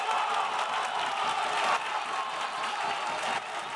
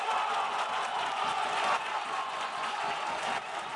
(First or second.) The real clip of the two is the first